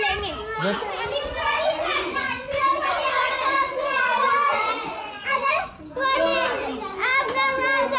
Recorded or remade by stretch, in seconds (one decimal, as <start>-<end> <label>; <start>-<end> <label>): 0.0-1.4 recorded; 1.4-5.7 remade; 5.7-8.0 recorded